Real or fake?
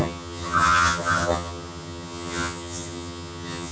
fake